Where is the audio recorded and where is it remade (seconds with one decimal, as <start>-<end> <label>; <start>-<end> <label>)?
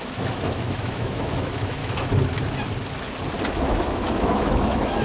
0.0-1.8 remade; 1.8-3.4 recorded; 3.4-5.0 remade